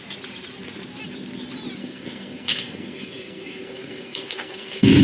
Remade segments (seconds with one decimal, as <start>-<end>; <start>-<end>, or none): 1.8-5.0

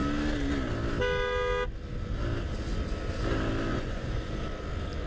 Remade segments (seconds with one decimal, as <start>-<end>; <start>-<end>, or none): 3.7-4.3

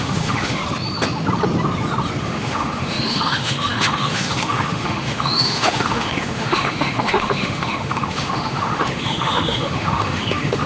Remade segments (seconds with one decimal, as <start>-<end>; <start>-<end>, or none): 0.0-0.6; 2.2-10.7

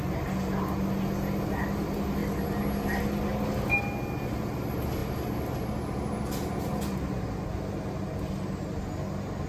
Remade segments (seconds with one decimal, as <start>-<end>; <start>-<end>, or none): none

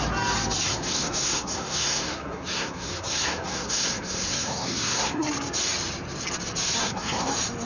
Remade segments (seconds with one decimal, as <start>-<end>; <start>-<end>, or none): 0.7-5.3; 6.8-7.3

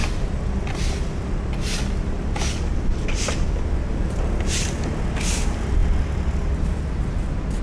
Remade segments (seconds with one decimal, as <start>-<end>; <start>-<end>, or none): none

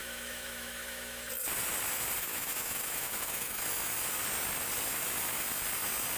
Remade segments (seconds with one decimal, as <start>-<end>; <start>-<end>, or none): 0.0-1.3; 2.2-3.6